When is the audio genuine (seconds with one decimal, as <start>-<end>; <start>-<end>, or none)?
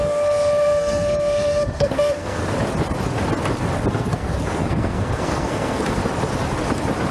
2.4-3.9; 6.0-7.1